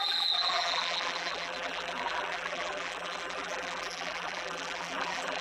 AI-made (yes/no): yes